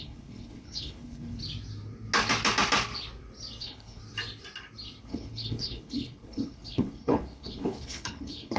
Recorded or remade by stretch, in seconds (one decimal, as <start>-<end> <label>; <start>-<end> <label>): 0.0-1.4 remade; 1.4-3.6 recorded; 3.6-4.0 remade; 4.0-5.0 recorded; 5.0-8.6 remade